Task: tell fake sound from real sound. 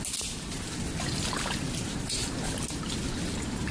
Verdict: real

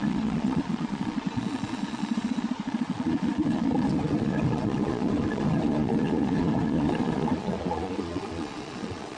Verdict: fake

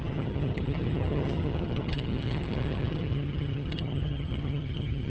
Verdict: fake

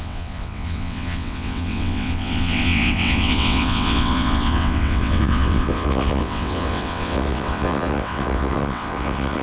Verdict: fake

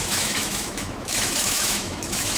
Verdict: fake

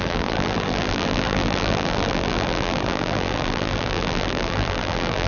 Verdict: fake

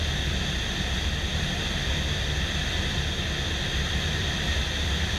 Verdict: real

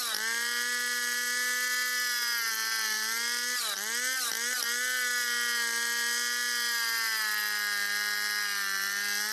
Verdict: real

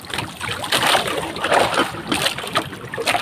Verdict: fake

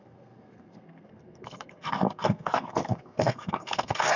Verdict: fake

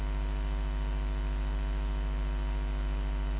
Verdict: real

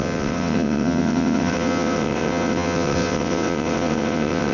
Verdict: fake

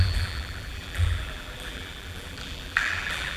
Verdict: fake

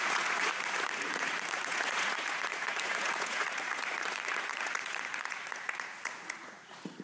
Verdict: fake